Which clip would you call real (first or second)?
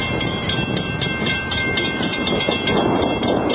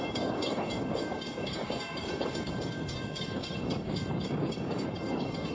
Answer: first